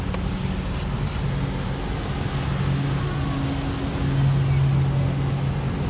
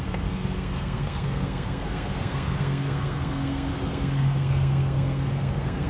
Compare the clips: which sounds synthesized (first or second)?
second